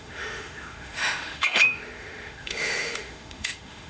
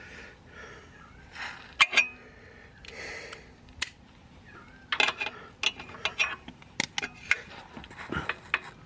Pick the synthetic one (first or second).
first